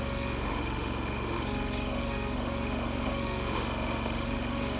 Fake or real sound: fake